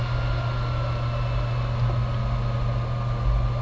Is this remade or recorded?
recorded